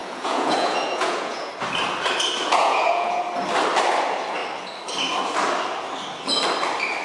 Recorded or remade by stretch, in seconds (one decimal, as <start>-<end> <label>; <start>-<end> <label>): 0.0-1.5 remade; 1.5-2.6 recorded; 2.6-3.2 remade; 3.2-7.0 recorded